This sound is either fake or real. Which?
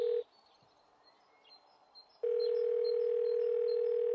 real